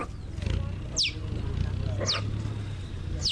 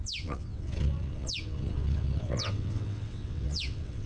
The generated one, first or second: second